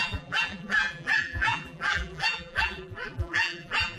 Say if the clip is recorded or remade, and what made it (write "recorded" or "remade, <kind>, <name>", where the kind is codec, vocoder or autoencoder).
remade, vocoder, BigVGAN v2